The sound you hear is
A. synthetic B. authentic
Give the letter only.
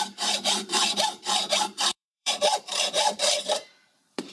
A